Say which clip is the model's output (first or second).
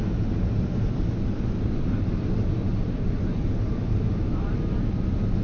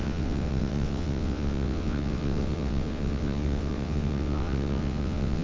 second